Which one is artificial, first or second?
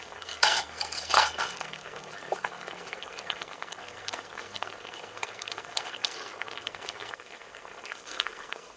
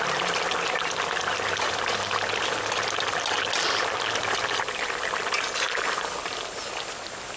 first